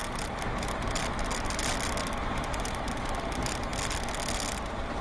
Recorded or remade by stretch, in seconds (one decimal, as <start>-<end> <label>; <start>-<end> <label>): 0.0-5.0 recorded